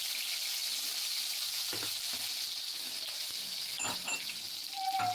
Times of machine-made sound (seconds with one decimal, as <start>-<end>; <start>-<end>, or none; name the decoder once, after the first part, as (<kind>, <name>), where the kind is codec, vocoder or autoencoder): 2.7-4.4 (autoencoder, DAC-VAE)